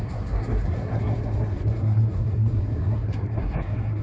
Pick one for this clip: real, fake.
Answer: fake